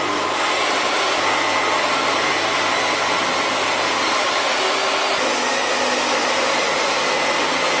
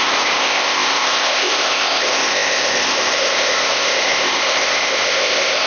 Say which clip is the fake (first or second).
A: second